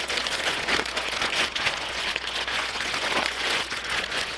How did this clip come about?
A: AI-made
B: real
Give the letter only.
A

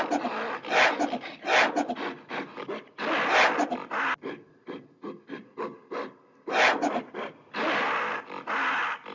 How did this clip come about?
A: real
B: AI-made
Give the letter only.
A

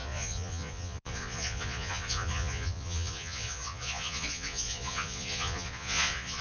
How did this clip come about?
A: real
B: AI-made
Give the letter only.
B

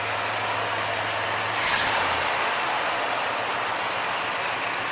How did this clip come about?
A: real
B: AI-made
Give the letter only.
A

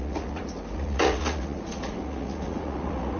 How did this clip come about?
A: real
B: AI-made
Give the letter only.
B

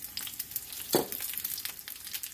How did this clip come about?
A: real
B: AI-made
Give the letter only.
A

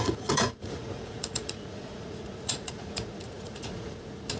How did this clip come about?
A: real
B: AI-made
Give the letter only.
B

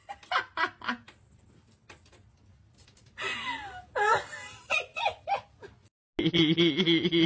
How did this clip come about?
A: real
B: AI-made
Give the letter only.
A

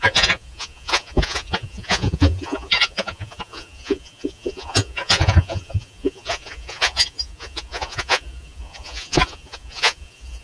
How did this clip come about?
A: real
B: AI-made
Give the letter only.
B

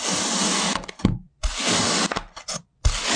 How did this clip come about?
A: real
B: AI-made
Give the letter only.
A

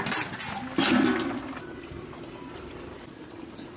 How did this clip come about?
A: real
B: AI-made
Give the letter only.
A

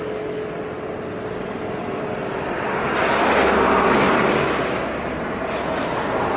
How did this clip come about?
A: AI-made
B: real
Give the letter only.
B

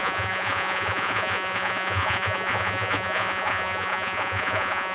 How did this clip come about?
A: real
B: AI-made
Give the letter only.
B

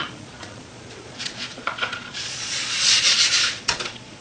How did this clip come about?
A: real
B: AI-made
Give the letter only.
B